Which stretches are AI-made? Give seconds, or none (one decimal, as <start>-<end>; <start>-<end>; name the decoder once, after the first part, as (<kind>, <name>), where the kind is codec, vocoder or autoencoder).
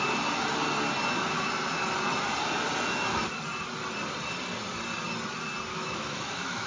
5.7-6.7 (autoencoder, DAC-VAE)